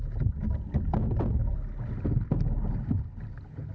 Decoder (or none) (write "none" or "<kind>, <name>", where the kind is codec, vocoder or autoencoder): none